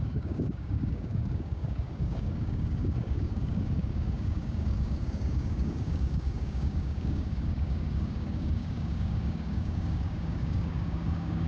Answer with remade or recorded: remade